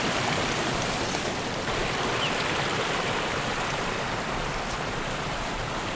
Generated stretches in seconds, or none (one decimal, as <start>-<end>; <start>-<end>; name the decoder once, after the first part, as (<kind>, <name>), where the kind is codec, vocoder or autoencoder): none